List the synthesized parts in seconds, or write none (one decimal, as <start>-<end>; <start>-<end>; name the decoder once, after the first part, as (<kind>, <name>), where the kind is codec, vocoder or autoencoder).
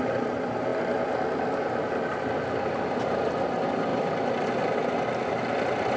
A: none